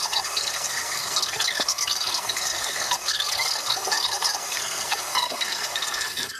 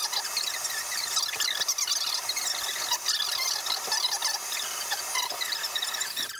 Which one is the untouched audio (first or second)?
second